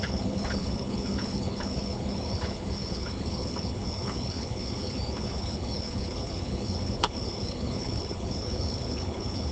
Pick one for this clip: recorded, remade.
remade